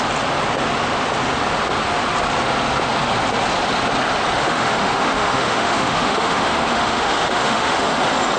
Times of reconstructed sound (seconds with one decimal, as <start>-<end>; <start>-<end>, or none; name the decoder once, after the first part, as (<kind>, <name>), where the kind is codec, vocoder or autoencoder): 4.4-7.9 (autoencoder, DAC-VAE)